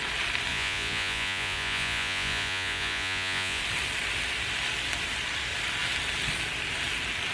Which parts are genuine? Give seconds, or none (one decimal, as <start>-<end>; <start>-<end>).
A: 0.0-0.5; 3.6-7.3

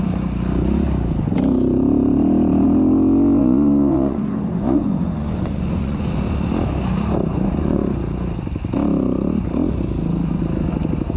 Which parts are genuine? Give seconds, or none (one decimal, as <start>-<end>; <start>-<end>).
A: 0.0-3.4; 6.1-7.3; 7.8-11.2

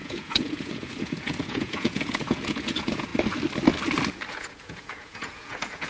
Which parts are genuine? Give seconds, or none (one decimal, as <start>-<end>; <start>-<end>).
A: 3.1-4.3